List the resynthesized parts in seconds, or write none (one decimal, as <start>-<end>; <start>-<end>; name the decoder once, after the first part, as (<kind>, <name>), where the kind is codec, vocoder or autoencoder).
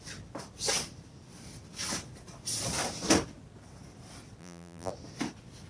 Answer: 4.4-4.9 (vocoder, BigVGAN v2)